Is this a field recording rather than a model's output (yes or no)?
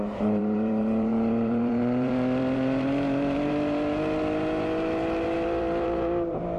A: no